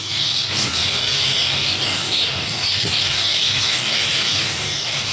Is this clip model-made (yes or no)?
yes